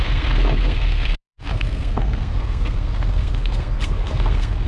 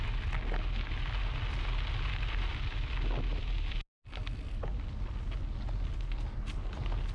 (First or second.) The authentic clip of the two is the second